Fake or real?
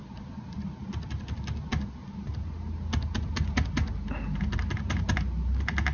real